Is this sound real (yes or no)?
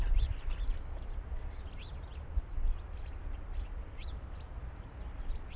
yes